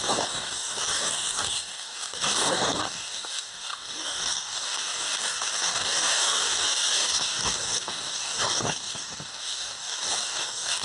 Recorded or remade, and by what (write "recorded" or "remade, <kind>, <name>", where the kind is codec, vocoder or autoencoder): remade, codec, DAC